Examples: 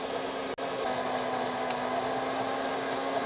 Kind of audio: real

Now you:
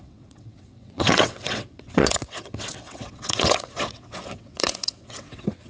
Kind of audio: fake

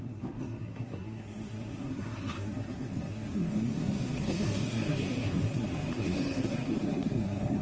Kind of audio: fake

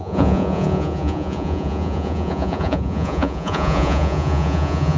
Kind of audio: fake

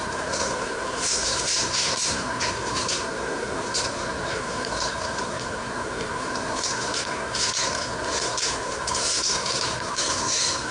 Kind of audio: fake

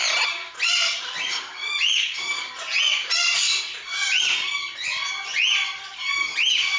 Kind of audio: real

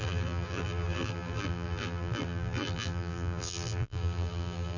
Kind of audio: fake